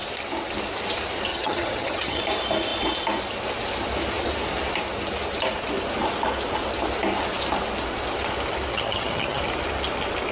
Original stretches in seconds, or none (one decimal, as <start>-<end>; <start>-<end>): 0.0-1.3; 2.2-8.7; 9.4-10.3